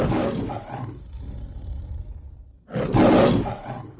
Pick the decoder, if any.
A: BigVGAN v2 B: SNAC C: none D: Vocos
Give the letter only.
C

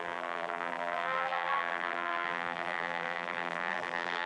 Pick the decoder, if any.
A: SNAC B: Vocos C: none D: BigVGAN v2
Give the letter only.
D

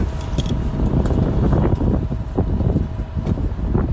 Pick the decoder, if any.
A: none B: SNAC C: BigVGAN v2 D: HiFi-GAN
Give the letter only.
A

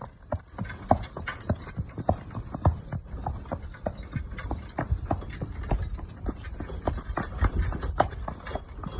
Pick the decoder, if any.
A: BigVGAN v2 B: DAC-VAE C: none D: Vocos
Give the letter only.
A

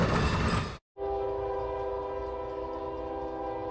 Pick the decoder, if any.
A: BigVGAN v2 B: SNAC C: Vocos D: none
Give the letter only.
D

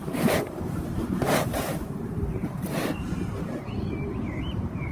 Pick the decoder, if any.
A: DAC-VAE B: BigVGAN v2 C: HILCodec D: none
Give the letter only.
B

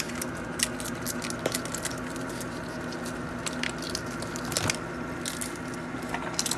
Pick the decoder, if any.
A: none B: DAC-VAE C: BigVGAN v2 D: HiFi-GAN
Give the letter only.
A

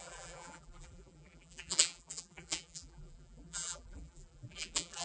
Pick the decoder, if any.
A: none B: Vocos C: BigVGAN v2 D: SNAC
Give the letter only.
C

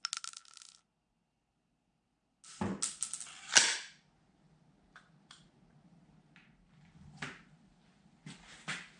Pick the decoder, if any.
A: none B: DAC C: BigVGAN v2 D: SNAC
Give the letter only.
A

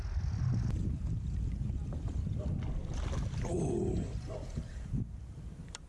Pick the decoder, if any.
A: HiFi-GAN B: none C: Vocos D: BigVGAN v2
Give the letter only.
D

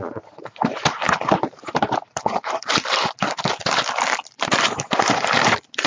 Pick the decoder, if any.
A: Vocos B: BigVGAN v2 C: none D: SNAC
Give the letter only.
B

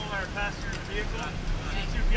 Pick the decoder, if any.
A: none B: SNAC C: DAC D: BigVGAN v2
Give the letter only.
A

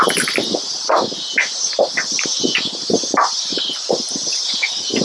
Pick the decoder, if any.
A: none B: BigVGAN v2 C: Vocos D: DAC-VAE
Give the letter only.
A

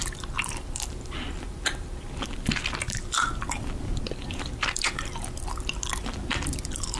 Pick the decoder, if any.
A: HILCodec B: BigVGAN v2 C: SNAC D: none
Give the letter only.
B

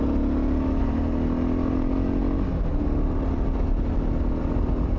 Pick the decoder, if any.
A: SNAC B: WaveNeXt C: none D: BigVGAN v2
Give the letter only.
C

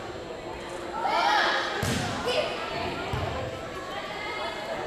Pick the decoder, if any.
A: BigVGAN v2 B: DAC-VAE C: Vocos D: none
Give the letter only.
D